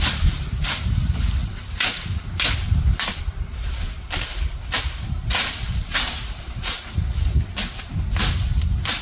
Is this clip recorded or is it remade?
recorded